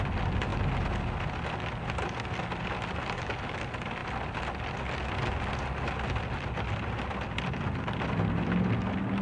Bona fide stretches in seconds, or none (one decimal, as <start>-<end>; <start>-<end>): 0.0-9.2